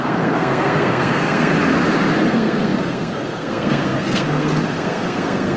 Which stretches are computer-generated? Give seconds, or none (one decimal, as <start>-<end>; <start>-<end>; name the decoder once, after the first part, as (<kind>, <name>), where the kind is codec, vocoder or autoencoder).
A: 0.0-1.5 (codec, SNAC); 2.3-5.6